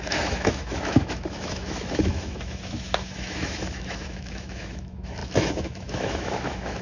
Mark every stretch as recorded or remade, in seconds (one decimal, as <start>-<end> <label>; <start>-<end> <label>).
0.0-6.8 remade